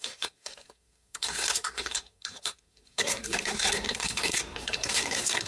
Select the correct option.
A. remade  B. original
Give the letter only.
A